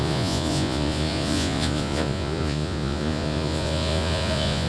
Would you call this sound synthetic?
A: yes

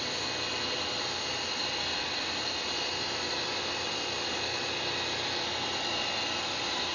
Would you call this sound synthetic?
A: no